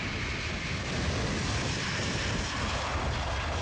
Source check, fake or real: real